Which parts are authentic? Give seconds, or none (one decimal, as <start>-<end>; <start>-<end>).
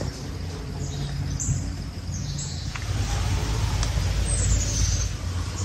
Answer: 0.0-2.2; 2.8-5.6